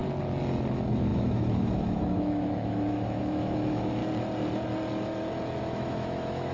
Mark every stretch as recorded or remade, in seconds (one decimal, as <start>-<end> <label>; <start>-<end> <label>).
0.0-0.7 recorded; 0.7-4.0 remade; 4.0-5.6 recorded; 5.6-6.5 remade